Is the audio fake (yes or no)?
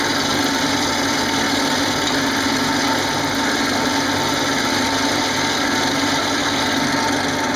no